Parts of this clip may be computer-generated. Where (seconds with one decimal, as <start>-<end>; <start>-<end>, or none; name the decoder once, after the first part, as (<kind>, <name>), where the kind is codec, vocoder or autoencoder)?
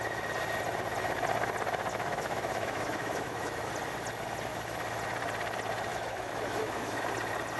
1.9-3.7 (autoencoder, DAC-VAE); 4.5-5.0; 5.9-7.0